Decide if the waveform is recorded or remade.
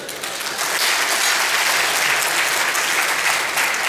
recorded